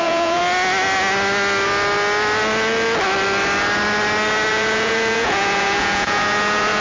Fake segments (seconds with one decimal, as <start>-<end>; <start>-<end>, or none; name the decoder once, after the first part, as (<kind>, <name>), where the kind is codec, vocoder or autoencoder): 0.0-0.4 (vocoder, Vocos); 4.5-6.8